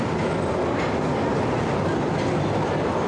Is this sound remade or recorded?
recorded